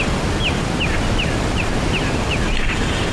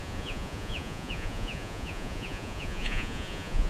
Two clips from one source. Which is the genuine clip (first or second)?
first